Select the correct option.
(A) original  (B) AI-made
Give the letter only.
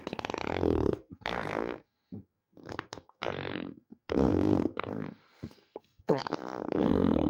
B